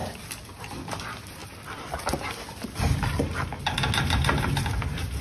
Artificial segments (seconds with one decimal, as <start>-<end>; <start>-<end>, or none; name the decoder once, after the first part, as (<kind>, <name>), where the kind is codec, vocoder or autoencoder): 0.0-1.4 (vocoder, BigVGAN v2); 4.5-5.2